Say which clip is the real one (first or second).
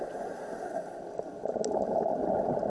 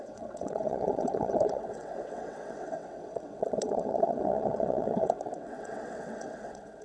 first